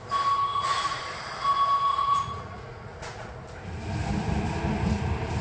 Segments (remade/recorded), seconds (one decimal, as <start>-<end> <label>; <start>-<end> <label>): 0.0-0.5 recorded; 0.5-1.0 remade; 1.0-1.9 recorded; 1.9-3.3 remade; 3.3-5.4 recorded